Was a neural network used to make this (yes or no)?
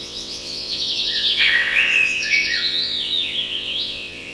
yes